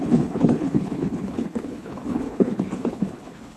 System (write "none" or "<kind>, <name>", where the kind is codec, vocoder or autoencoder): codec, HILCodec